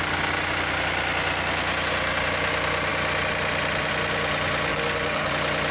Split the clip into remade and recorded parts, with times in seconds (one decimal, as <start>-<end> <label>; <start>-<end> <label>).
0.0-4.7 recorded; 4.7-5.3 remade; 5.3-5.7 recorded